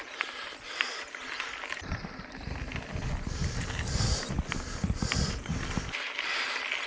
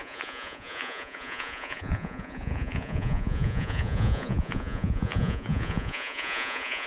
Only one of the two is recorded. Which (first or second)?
first